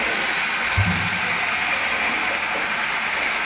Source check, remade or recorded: recorded